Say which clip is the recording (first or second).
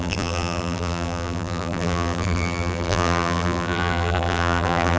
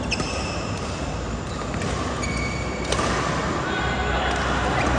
second